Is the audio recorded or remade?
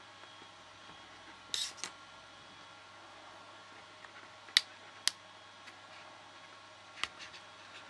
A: recorded